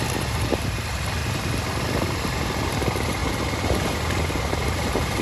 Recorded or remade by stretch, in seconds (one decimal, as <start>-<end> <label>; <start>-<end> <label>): 0.0-1.2 remade; 1.2-2.7 recorded; 2.7-3.2 remade; 3.2-4.5 recorded; 4.5-5.2 remade